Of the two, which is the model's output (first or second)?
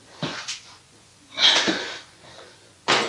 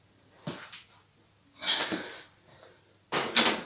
first